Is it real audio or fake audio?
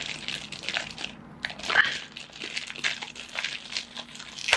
real